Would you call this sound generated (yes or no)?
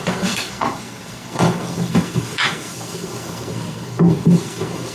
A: yes